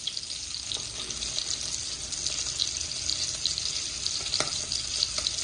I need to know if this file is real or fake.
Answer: real